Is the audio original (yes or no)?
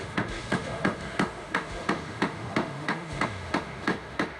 no